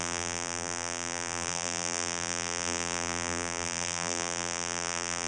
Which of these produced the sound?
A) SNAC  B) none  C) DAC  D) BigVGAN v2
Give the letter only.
D